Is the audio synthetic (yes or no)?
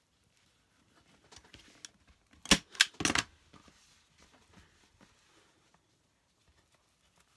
no